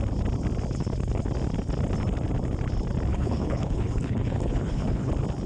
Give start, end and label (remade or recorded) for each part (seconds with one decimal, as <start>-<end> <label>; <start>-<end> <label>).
0.0-3.1 recorded; 3.1-5.1 remade; 5.1-5.5 recorded